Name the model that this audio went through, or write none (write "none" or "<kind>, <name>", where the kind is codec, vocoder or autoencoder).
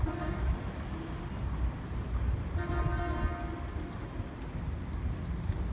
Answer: none